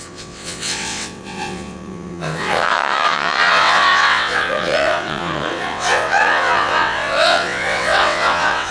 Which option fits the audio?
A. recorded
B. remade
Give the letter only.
B